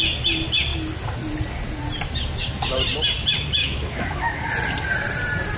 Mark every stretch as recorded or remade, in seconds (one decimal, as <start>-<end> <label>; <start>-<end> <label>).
0.0-3.6 recorded; 3.6-4.5 remade; 4.5-5.6 recorded